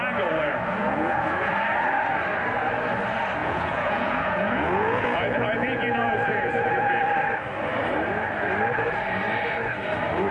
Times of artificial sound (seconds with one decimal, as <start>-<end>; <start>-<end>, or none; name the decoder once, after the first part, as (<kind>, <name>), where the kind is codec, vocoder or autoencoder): 0.8-1.5 (vocoder, Vocos); 3.4-7.0